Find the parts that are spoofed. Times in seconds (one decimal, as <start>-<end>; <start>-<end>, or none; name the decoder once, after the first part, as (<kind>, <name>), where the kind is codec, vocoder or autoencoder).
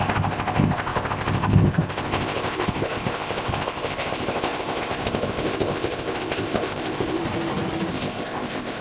0.0-7.2 (codec, ZipCodec); 7.9-8.8